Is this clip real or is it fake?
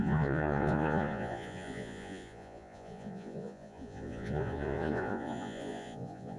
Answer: fake